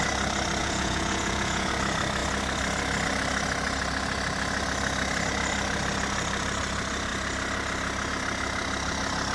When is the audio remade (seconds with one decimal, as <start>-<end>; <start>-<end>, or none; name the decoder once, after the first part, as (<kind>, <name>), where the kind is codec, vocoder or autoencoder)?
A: 0.6-1.7 (vocoder, Vocos)

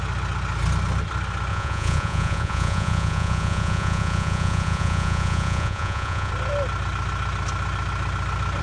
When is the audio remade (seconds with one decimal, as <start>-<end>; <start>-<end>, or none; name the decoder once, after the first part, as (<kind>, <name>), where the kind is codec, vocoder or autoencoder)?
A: 1.5-6.3 (vocoder, Vocos)

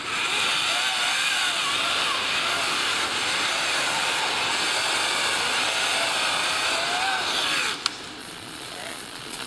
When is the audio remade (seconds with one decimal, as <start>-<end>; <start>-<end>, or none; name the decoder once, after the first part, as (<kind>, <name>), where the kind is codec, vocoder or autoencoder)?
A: 8.2-9.5 (vocoder, Vocos)

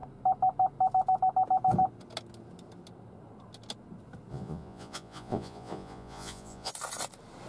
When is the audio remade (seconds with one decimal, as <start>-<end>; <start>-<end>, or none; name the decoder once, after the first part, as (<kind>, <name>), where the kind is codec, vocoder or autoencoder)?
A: 4.3-6.7 (vocoder, Vocos)

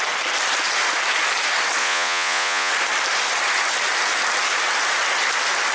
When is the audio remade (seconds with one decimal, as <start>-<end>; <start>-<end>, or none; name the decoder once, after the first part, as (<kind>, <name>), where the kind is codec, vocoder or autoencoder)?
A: 1.8-2.7 (vocoder, Vocos)